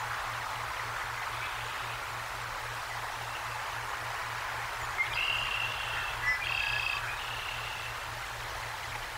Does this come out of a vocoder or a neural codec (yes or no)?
no